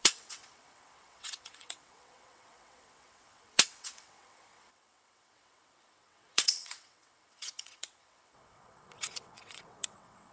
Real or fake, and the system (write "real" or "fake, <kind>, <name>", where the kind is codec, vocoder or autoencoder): fake, vocoder, WaveNeXt